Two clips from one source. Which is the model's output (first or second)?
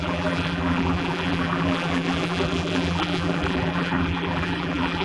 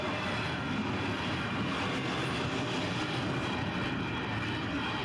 first